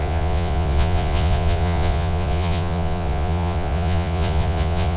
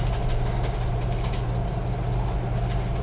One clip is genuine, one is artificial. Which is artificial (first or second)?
first